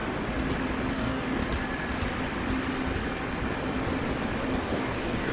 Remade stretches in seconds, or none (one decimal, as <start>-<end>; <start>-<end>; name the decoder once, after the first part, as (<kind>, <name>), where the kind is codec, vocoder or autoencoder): 0.9-1.4 (codec, DAC); 4.6-5.3